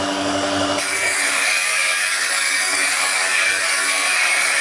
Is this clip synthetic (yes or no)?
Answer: yes